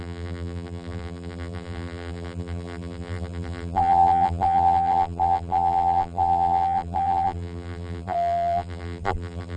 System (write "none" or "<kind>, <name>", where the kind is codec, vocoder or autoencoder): vocoder, BigVGAN v2